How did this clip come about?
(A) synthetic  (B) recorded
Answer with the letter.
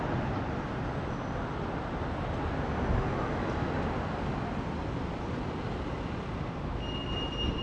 B